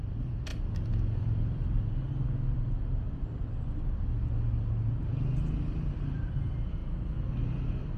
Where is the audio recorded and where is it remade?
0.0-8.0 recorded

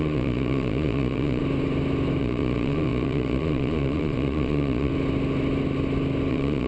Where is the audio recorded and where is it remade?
0.0-1.4 remade; 1.4-2.2 recorded; 2.2-4.9 remade; 4.9-6.3 recorded; 6.3-6.7 remade

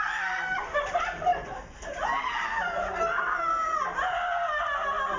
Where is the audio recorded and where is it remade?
0.0-5.2 recorded

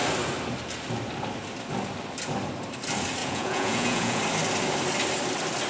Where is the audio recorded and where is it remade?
0.0-3.2 recorded; 3.2-4.2 remade; 4.2-5.7 recorded

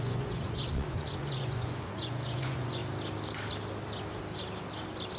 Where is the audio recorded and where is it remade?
0.0-2.8 remade; 2.8-5.2 recorded